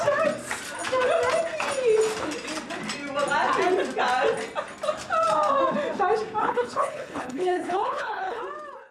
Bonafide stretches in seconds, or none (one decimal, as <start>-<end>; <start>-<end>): 0.0-6.4; 8.4-8.9